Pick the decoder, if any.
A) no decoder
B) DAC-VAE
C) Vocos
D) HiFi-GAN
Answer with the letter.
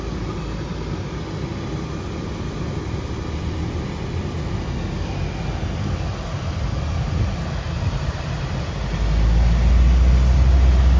A